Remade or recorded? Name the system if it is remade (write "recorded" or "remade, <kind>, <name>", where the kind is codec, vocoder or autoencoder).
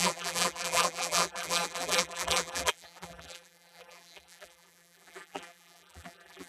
remade, vocoder, BigVGAN v2